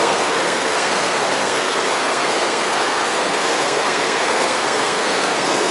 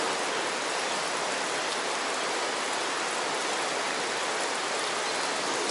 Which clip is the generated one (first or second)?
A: first